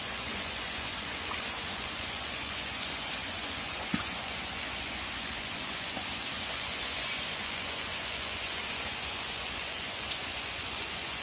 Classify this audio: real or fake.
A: fake